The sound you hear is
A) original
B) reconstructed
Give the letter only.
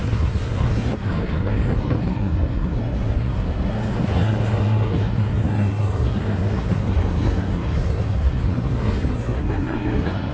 B